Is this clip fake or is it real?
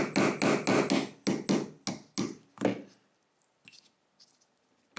real